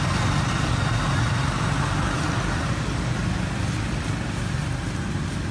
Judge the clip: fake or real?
real